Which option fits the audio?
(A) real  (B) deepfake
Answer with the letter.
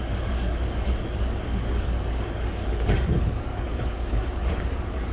B